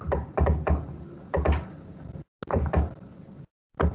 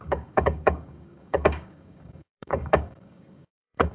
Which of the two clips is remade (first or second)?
second